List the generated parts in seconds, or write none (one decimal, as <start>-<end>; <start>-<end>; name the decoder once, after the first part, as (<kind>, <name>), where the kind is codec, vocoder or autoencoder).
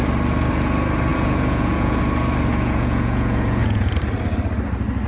1.1-2.0 (vocoder, Vocos); 2.5-3.9